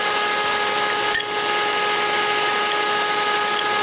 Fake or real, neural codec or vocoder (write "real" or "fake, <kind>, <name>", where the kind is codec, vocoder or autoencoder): real